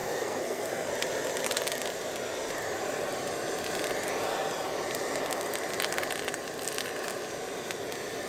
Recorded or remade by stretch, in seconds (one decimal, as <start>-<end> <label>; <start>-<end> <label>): 0.0-0.9 remade; 0.9-8.3 recorded